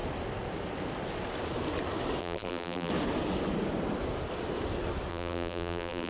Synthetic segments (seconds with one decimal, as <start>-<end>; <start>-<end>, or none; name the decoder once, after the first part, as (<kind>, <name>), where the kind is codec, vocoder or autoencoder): 2.2-2.9 (vocoder, BigVGAN v2); 5.1-6.1